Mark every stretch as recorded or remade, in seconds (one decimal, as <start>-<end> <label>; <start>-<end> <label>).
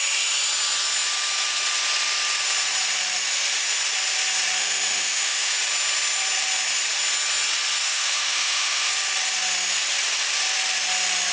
0.0-4.6 recorded; 4.6-5.5 remade; 5.5-7.8 recorded; 7.8-8.9 remade; 8.9-11.3 recorded